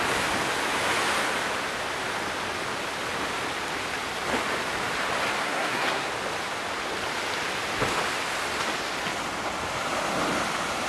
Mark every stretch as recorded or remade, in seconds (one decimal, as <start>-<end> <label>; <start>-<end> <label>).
0.0-5.4 recorded; 5.4-6.1 remade; 6.1-10.9 recorded